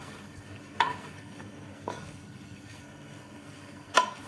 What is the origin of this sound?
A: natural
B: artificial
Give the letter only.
B